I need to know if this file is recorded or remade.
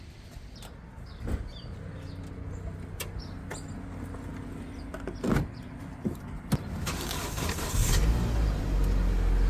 recorded